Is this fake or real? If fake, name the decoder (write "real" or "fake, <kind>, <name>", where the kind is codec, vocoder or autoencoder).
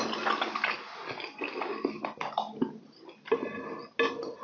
real